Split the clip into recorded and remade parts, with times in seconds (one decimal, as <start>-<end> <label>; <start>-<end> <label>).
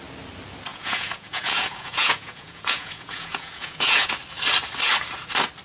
0.0-0.7 recorded; 0.7-4.1 remade; 4.1-5.6 recorded